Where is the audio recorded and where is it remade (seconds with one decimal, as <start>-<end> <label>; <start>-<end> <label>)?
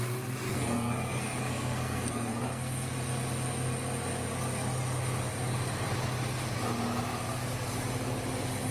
0.0-0.5 recorded; 0.5-2.9 remade; 2.9-8.7 recorded